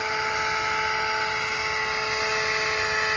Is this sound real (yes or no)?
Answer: yes